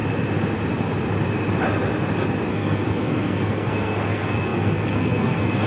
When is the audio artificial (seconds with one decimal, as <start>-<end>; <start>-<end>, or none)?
2.5-5.7